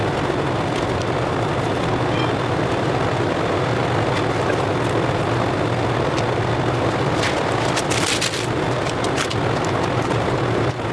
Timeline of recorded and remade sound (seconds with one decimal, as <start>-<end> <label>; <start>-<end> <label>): 0.0-10.9 remade